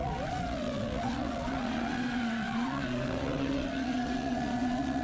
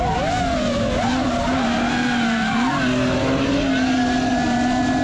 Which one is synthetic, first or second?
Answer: first